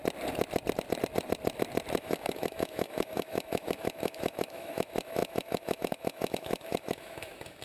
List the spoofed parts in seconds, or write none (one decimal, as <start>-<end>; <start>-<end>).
2.0-7.6